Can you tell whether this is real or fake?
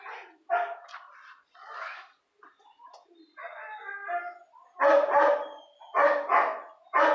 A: real